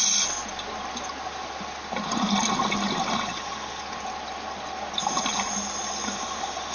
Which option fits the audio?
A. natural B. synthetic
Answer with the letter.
A